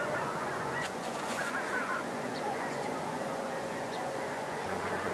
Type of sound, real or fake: fake